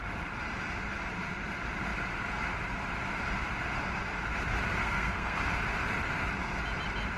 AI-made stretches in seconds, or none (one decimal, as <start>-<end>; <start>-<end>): 4.8-5.4